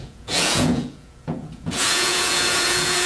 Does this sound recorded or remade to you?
remade